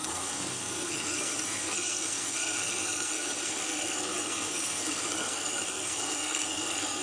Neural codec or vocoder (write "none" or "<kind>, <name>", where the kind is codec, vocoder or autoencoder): codec, SNAC